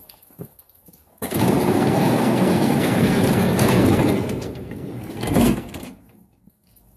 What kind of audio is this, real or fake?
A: fake